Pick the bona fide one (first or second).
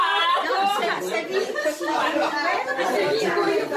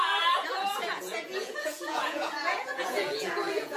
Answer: first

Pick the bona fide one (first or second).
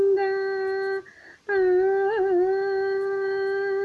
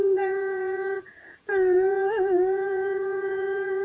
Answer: first